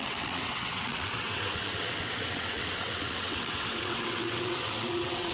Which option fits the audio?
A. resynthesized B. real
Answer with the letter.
A